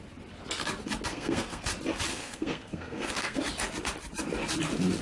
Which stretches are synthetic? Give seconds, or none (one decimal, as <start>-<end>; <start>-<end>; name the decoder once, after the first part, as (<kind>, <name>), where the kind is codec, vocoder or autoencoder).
1.1-1.7 (codec, SNAC); 2.1-3.4